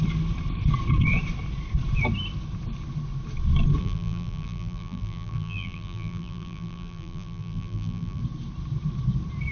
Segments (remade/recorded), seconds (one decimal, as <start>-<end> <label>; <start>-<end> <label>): 0.0-3.8 recorded; 3.8-8.2 remade; 8.2-9.5 recorded